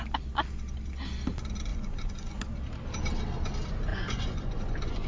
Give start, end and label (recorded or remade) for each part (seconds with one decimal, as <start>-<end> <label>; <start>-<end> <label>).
0.0-1.7 recorded; 1.7-2.4 remade; 2.4-3.9 recorded; 3.9-5.1 remade